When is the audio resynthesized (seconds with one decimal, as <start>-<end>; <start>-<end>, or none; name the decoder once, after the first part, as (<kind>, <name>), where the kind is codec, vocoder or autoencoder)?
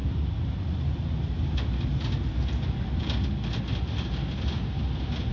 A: none